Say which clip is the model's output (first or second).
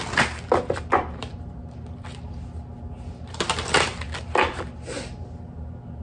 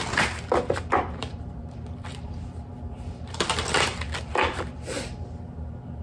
second